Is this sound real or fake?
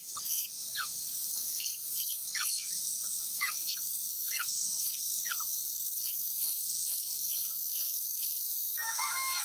fake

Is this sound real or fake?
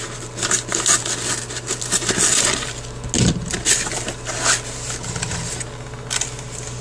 real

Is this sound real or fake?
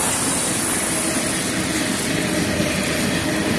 real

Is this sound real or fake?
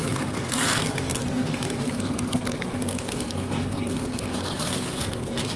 fake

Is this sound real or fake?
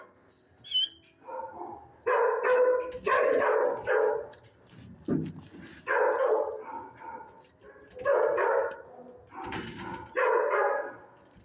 real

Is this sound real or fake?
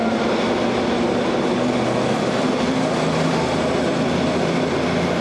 real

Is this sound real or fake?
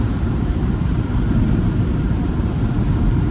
fake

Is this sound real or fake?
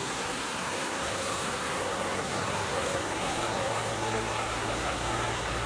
fake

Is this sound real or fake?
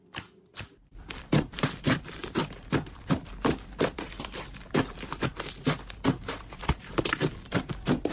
fake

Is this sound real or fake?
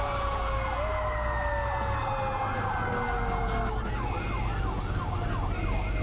real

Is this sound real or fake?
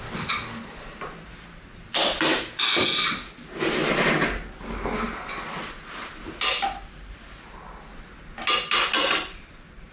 real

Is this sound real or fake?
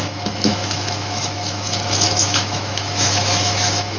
fake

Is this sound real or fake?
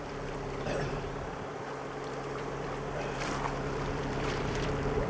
fake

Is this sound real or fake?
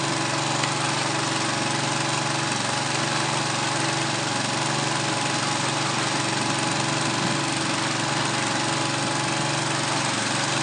real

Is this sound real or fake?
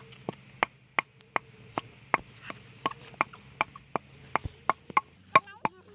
real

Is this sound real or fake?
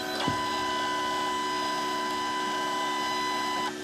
real